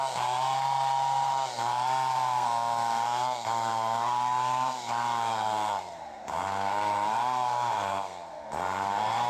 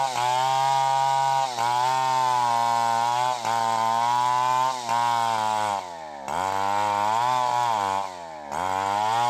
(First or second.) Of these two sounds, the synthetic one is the first